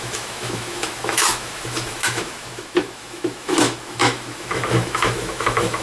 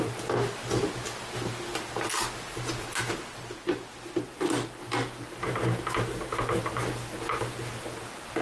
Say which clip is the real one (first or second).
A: second